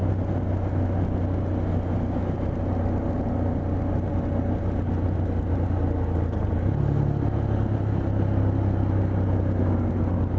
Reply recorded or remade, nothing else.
recorded